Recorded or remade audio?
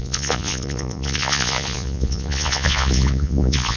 remade